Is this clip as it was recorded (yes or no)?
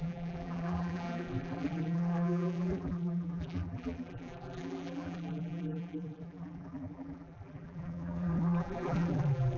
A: no